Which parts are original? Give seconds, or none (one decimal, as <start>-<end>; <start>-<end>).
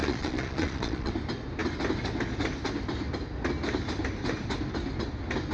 1.1-5.5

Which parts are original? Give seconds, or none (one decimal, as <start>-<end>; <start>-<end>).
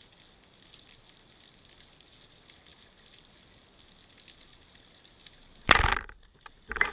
0.0-6.9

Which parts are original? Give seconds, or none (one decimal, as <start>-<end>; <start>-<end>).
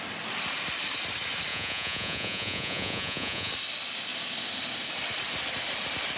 0.0-1.5; 3.5-6.2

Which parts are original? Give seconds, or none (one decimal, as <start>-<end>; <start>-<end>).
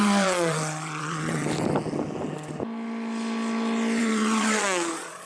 1.4-4.0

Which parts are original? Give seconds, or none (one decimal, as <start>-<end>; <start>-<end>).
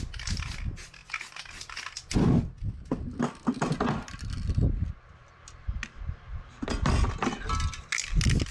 0.0-8.5